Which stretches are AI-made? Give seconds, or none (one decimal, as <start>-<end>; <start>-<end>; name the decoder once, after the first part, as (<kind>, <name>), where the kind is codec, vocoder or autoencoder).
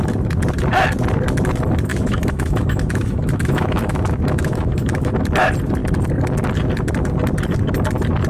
1.9-5.1 (autoencoder, DAC-VAE)